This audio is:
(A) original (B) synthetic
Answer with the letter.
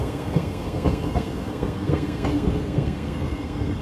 B